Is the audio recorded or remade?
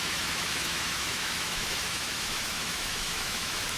remade